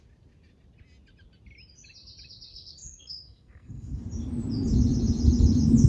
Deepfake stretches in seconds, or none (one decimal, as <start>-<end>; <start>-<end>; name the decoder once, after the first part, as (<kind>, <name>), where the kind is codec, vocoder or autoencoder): 2.5-4.0 (codec, SNAC)